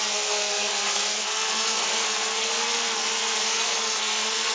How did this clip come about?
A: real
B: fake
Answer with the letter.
B